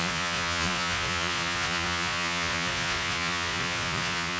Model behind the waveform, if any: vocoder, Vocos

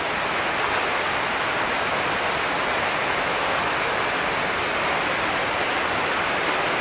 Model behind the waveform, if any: none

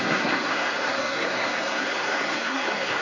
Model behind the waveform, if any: codec, SNAC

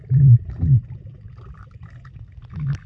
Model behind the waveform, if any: none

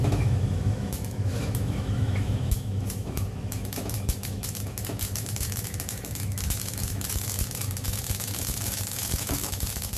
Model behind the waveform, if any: autoencoder, DAC-VAE